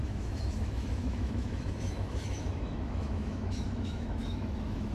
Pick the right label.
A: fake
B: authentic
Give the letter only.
A